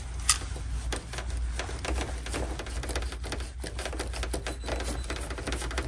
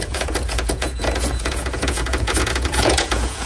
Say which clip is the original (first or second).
first